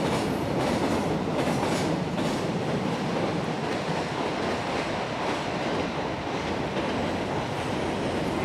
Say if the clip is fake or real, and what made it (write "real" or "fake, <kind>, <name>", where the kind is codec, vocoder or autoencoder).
real